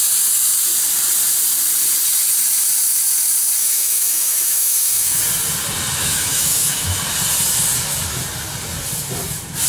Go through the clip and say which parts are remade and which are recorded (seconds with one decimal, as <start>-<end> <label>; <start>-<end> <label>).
0.0-3.6 recorded; 3.6-5.2 remade; 5.2-6.0 recorded; 6.0-7.0 remade; 7.0-9.7 recorded